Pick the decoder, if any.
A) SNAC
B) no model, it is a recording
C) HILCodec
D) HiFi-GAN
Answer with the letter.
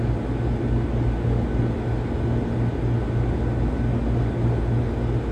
B